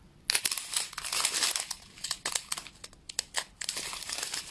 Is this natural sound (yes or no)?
yes